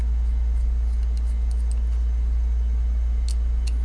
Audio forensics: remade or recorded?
recorded